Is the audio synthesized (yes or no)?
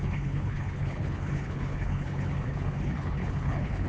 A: yes